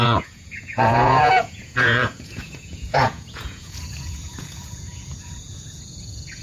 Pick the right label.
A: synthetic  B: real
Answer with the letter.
A